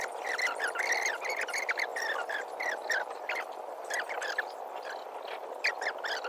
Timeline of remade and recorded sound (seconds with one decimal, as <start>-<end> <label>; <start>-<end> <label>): 0.0-6.3 recorded